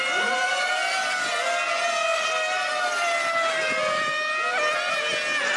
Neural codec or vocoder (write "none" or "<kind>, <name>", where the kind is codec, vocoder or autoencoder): none